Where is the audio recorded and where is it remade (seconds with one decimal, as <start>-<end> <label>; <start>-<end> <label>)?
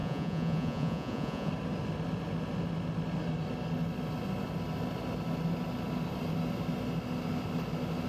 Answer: 0.0-1.5 remade; 1.5-8.1 recorded